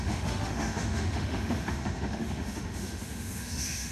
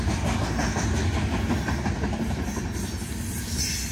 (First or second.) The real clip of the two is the second